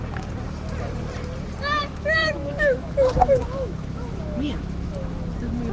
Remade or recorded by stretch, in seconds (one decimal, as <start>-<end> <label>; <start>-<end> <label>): 0.0-1.8 recorded; 1.8-5.2 remade; 5.2-5.7 recorded